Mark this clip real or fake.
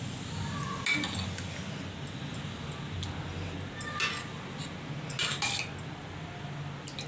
real